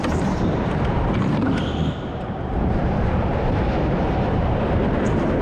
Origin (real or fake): fake